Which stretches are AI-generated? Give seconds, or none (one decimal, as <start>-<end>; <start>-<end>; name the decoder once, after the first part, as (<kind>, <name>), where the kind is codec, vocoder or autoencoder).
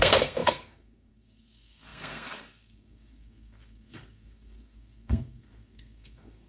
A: 0.0-6.5 (codec, SNAC)